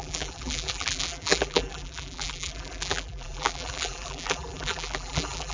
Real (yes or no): no